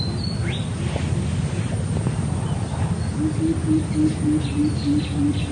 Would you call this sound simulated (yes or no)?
no